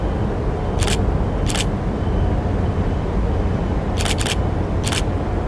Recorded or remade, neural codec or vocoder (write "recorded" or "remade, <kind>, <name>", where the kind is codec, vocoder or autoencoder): recorded